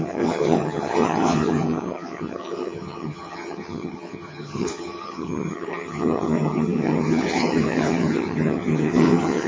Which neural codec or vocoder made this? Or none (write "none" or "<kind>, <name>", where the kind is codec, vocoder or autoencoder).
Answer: vocoder, HiFi-GAN